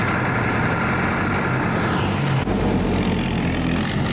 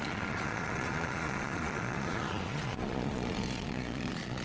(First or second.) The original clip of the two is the first